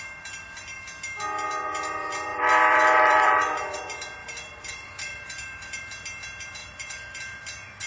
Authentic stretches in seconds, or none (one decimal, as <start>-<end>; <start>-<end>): 0.0-2.3; 3.8-4.2; 5.8-6.6; 7.4-7.9